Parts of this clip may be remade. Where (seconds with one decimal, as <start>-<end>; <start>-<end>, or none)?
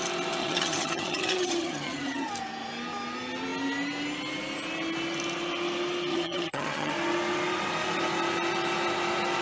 0.4-2.3; 6.1-6.9